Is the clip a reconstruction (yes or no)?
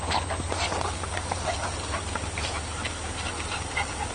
no